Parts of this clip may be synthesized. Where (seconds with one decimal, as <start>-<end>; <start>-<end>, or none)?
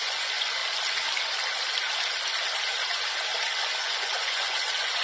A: 0.0-0.6; 3.6-5.0